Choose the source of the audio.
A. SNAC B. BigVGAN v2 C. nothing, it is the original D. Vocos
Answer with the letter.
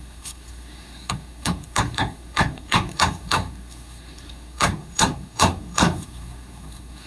A